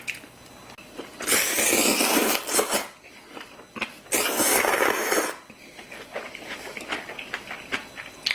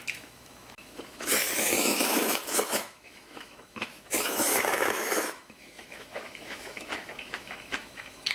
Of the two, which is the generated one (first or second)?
second